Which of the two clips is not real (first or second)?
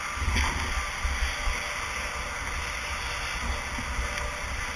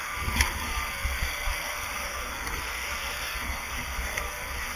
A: second